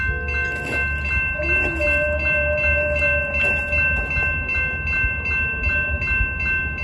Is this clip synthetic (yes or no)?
no